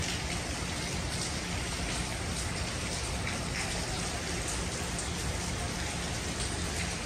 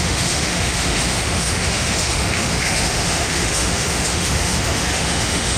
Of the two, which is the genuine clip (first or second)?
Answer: first